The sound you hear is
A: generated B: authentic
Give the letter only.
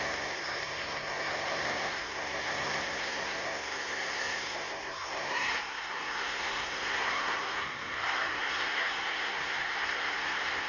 A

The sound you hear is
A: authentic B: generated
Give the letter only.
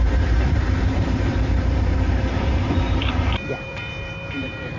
B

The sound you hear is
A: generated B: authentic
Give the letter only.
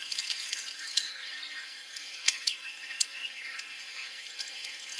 A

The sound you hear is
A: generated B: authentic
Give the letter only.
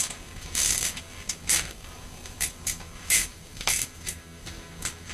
A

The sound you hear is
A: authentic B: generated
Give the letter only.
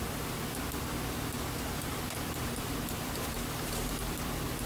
B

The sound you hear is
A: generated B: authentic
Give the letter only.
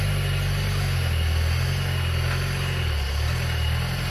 B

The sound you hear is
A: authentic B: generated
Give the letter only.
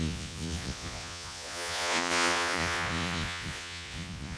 B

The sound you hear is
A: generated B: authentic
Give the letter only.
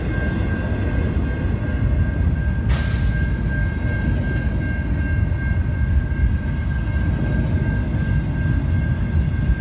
B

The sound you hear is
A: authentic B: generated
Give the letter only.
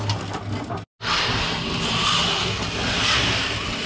A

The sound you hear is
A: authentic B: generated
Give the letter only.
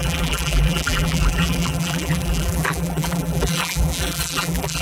B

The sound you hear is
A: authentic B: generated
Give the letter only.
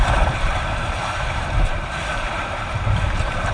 B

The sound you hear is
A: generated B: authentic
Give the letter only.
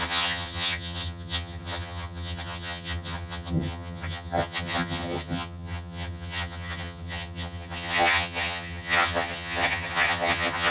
A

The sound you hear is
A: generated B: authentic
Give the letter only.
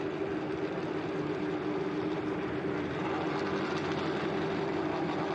B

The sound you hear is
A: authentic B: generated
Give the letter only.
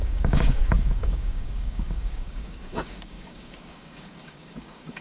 B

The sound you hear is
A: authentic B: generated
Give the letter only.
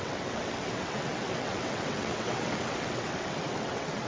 B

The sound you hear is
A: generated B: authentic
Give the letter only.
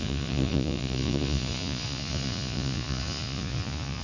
A